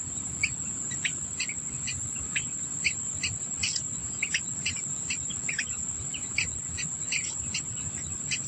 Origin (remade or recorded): recorded